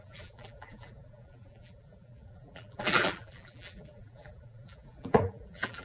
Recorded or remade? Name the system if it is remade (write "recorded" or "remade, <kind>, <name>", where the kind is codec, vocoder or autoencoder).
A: remade, vocoder, BigVGAN v2